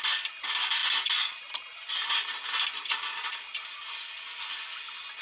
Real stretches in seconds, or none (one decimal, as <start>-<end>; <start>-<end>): 0.0-5.2